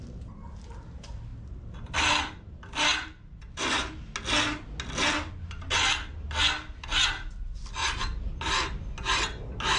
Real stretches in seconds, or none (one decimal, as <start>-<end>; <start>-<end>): 0.0-7.8; 8.3-9.8